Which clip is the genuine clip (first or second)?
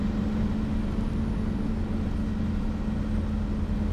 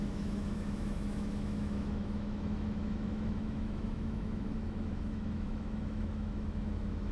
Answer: first